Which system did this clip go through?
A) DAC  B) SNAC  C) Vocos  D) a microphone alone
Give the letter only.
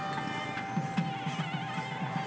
D